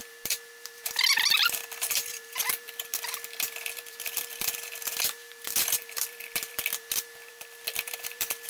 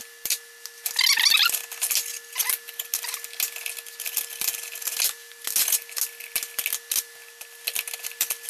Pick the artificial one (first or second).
first